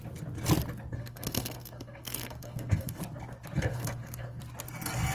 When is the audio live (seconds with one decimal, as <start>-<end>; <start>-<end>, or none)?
0.0-0.9; 3.0-3.7; 4.4-5.1